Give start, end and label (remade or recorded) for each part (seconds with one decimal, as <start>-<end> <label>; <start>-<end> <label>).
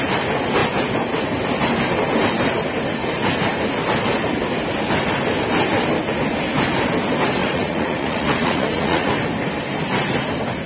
0.0-7.4 recorded; 7.4-9.1 remade; 9.1-10.7 recorded